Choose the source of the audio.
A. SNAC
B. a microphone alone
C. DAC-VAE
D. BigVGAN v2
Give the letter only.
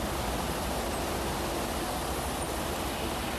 B